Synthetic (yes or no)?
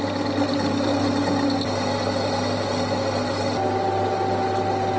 no